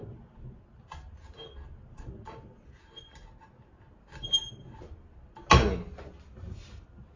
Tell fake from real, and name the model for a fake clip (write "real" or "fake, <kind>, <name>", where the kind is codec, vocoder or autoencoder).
real